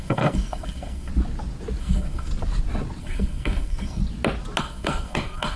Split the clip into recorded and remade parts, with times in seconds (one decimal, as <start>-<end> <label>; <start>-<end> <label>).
0.0-1.1 remade; 1.1-1.8 recorded; 1.8-2.3 remade; 2.3-3.0 recorded; 3.0-4.0 remade; 4.0-4.6 recorded; 4.6-5.6 remade